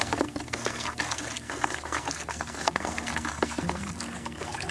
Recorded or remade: remade